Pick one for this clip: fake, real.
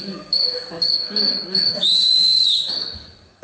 fake